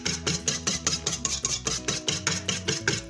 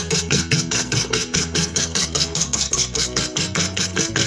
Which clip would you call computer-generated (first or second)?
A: second